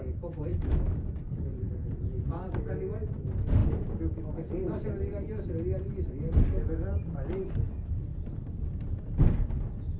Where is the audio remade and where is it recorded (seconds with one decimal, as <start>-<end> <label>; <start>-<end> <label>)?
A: 0.0-0.5 recorded; 0.5-2.7 remade; 2.7-8.1 recorded; 8.1-9.0 remade; 9.0-10.0 recorded

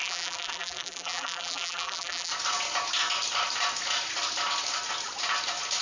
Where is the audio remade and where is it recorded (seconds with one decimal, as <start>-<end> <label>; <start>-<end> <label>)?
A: 0.0-2.3 remade; 2.3-5.8 recorded

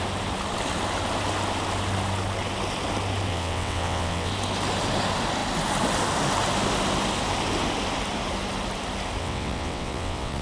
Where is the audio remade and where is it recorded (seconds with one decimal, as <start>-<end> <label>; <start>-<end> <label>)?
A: 0.0-3.3 recorded; 3.3-4.3 remade; 4.3-9.2 recorded; 9.2-10.4 remade

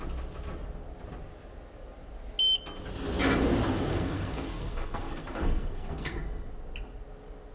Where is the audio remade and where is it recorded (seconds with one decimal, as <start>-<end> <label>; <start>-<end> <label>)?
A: 0.0-3.9 recorded; 3.9-6.5 remade; 6.5-7.5 recorded